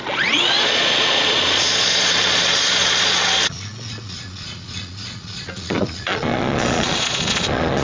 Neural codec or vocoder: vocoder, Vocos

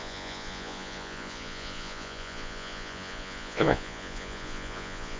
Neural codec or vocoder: vocoder, Vocos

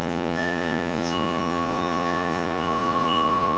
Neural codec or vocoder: vocoder, Vocos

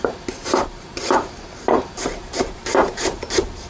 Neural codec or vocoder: vocoder, BigVGAN v2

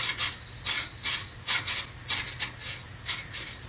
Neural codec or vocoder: none